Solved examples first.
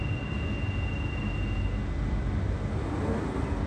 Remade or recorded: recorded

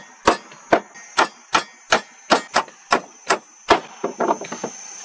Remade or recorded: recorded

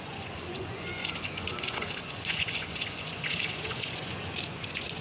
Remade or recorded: remade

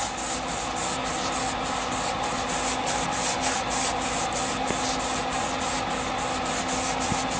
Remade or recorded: recorded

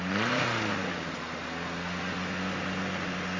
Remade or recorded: recorded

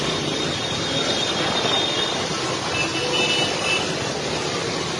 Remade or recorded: recorded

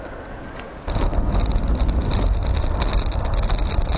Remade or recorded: recorded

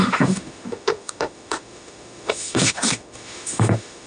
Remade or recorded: remade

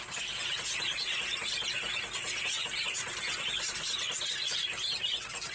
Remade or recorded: recorded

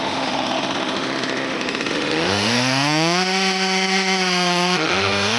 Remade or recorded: remade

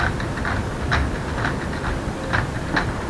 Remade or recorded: recorded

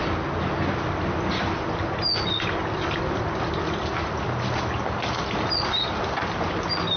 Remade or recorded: recorded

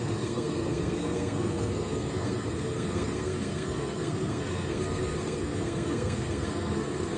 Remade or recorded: remade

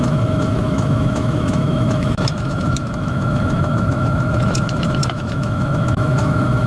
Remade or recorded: remade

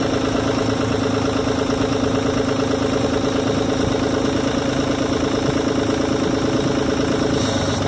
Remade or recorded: recorded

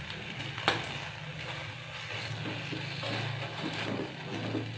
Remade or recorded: recorded